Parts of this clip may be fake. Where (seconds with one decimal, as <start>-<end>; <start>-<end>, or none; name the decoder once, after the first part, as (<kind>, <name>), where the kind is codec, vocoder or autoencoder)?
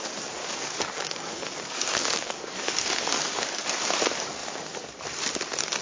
0.4-3.9 (codec, DAC)